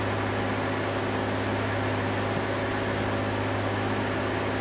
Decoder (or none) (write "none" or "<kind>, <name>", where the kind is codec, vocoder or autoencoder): none